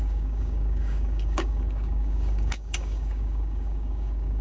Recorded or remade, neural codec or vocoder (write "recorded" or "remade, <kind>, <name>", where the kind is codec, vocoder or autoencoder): remade, codec, DAC